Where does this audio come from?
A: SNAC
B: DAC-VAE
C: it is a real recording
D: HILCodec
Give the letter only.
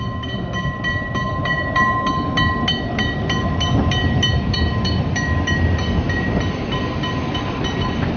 C